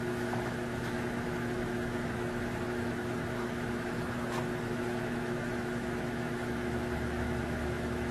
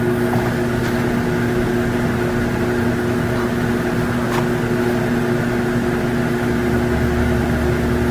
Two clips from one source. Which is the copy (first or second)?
first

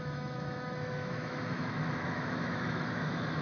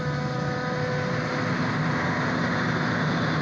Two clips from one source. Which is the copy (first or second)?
first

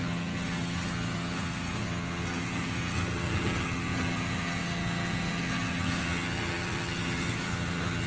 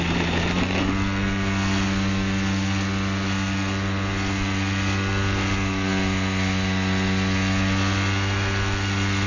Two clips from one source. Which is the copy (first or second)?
first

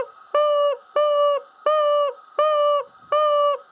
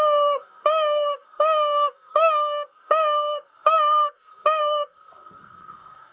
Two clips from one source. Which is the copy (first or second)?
second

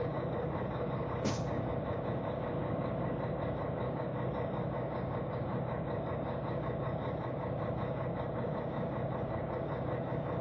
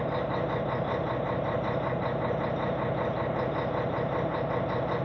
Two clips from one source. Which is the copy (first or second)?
first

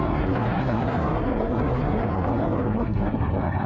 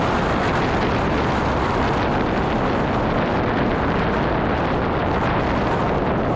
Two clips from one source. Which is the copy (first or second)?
first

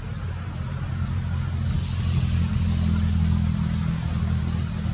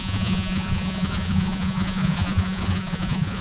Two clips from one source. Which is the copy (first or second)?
second